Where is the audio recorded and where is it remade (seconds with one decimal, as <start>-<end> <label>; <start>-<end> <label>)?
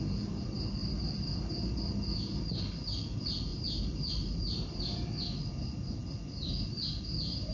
0.0-0.8 recorded; 0.8-1.9 remade; 1.9-3.5 recorded; 3.5-4.8 remade; 4.8-7.5 recorded